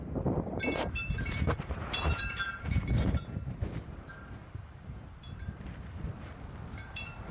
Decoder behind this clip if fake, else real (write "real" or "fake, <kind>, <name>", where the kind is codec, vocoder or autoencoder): fake, vocoder, BigVGAN v2